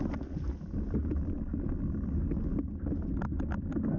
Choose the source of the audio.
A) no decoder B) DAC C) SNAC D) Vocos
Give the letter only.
A